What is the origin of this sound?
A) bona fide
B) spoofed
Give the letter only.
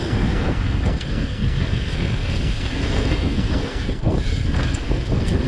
B